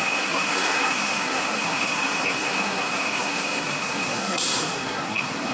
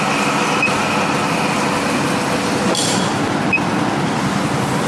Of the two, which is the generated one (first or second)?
first